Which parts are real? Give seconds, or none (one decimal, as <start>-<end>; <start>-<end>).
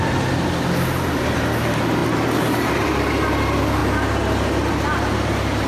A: 0.0-5.7